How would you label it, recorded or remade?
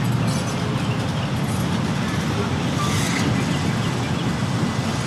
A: recorded